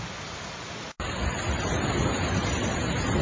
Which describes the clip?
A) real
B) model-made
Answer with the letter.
A